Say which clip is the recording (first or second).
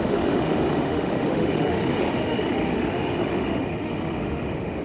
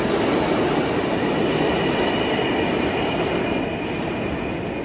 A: second